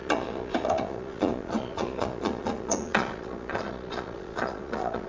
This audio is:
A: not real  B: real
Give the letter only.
A